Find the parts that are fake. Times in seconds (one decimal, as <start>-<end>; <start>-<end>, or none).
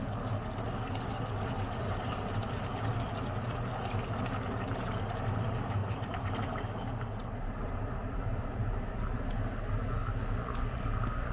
1.9-2.9; 5.8-6.3; 7.6-8.9